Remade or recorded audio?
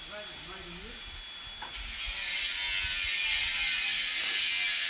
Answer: recorded